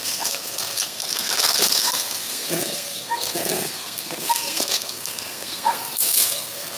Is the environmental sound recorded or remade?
remade